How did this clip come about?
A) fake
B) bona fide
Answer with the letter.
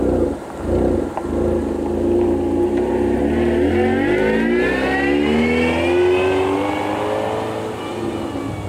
B